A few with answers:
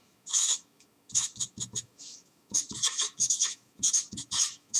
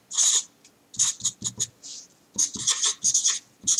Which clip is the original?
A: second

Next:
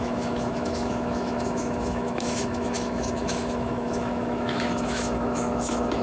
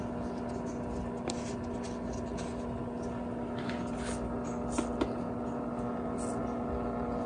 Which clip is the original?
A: second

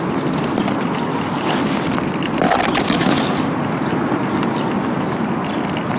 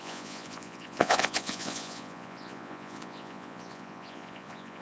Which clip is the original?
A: first